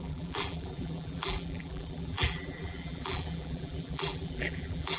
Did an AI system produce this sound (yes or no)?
yes